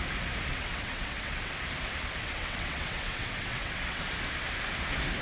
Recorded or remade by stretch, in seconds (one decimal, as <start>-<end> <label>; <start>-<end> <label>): 0.0-0.5 recorded; 0.5-1.5 remade; 1.5-2.2 recorded; 2.2-4.0 remade; 4.0-5.2 recorded